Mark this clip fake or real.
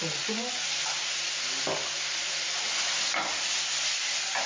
real